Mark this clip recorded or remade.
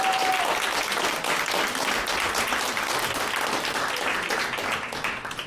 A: recorded